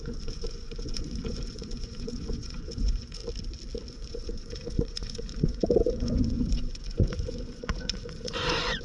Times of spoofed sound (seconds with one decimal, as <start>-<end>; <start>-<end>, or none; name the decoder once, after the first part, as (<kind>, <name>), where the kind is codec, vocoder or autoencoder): 0.0-3.2 (vocoder, Vocos); 3.9-8.8